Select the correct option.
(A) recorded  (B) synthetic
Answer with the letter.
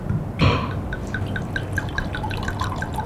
A